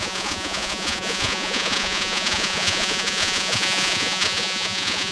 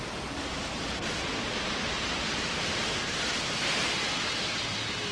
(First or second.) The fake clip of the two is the first